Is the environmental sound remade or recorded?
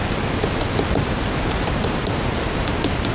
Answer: recorded